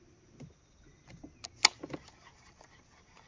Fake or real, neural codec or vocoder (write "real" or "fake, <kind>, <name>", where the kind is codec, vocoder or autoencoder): real